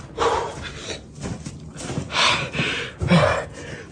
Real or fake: real